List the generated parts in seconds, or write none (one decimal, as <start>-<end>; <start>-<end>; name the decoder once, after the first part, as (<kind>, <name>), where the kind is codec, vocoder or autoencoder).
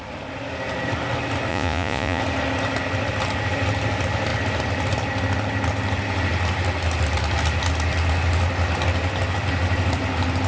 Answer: 1.5-2.2 (vocoder, Vocos)